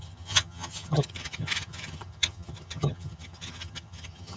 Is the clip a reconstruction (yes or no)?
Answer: yes